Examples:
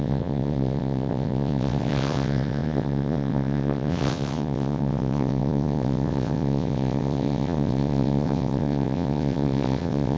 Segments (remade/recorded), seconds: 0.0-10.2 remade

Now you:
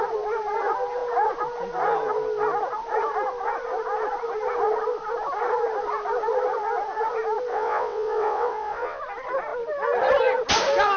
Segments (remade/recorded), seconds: 0.0-7.5 recorded; 7.5-9.0 remade; 9.0-11.0 recorded